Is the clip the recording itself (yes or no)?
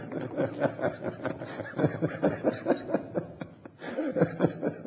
yes